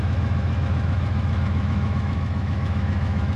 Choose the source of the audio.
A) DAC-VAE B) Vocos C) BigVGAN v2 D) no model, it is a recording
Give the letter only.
A